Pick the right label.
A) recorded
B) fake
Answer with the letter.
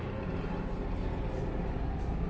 B